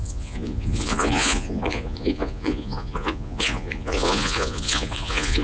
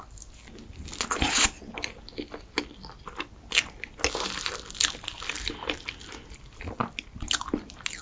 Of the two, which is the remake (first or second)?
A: first